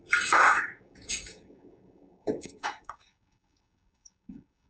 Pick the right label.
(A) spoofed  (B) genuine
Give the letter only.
A